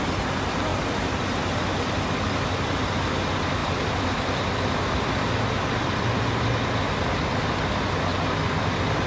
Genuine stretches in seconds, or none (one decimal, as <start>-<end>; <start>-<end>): 0.0-9.1